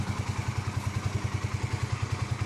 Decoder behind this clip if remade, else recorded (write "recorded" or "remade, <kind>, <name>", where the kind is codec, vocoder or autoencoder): recorded